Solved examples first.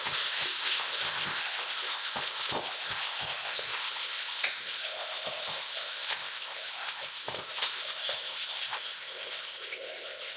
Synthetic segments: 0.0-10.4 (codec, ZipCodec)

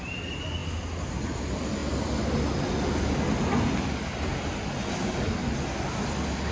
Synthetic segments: none

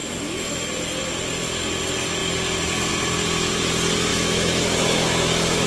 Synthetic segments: 0.0-0.7 (autoencoder, DAC-VAE); 4.1-5.7

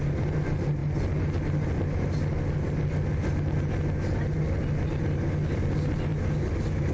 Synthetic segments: none

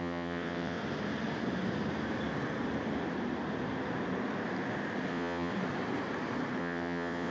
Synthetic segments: 0.0-0.8 (vocoder, WaveNeXt); 5.1-5.5; 6.6-7.3

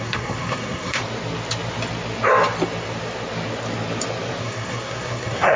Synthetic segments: 0.0-1.0 (codec, SNAC); 4.4-5.6

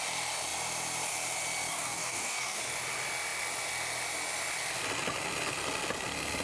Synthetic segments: 1.7-2.6 (codec, DAC)